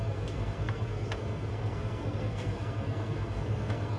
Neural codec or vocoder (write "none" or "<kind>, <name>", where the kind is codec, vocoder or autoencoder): codec, SNAC